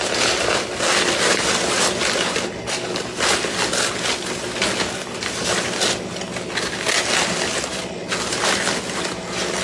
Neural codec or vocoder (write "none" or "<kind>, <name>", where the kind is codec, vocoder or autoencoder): none